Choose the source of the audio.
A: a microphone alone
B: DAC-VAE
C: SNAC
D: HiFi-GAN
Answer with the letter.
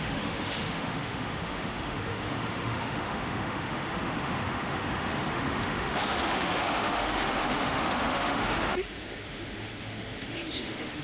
B